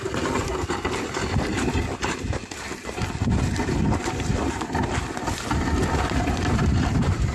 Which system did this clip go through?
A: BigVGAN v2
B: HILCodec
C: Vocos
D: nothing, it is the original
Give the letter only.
A